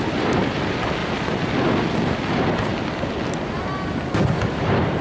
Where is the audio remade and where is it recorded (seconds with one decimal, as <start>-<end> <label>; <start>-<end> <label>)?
0.0-5.0 recorded